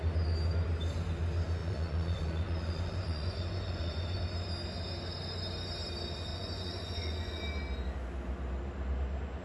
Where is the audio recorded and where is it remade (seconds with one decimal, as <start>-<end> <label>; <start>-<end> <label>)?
0.0-1.6 recorded; 1.6-4.2 remade; 4.2-6.3 recorded; 6.3-7.4 remade; 7.4-9.4 recorded